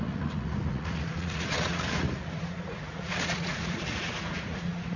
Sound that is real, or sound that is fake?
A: fake